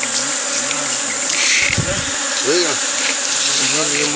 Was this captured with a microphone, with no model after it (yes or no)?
yes